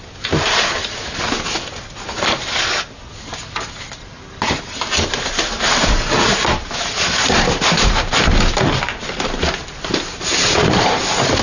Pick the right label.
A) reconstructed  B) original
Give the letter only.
B